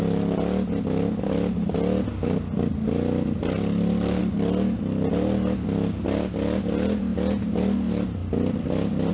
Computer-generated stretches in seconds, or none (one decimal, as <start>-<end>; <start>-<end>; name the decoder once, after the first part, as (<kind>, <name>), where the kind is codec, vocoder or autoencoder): none

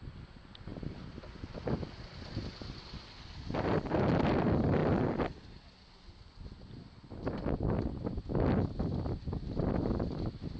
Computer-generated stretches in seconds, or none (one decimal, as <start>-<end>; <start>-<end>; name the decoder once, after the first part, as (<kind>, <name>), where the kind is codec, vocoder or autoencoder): none